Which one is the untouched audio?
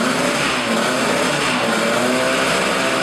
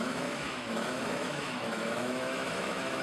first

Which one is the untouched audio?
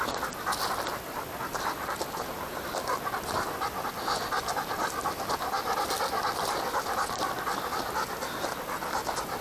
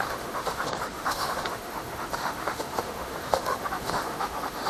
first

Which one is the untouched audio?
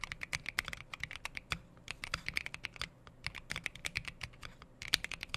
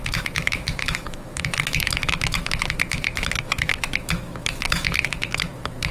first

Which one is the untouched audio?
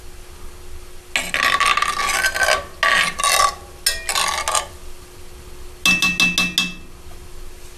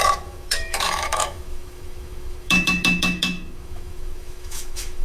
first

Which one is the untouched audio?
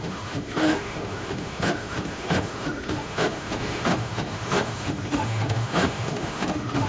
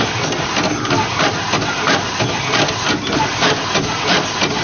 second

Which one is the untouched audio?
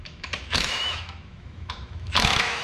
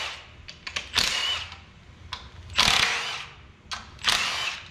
second